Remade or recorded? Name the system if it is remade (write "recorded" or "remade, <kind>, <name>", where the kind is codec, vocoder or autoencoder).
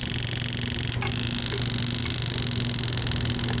recorded